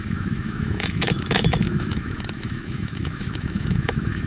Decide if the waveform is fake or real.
fake